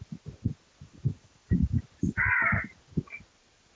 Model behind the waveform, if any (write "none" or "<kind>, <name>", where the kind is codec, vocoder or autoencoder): none